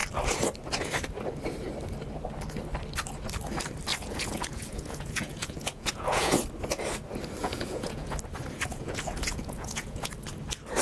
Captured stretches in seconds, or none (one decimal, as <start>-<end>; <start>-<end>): 0.0-3.9; 6.3-7.4; 8.1-8.7; 10.1-10.8